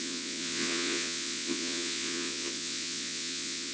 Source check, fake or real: fake